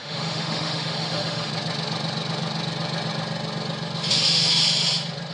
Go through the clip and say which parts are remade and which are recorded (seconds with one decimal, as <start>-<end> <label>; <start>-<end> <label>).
0.0-1.5 remade; 1.5-4.1 recorded; 4.1-4.6 remade; 4.6-5.3 recorded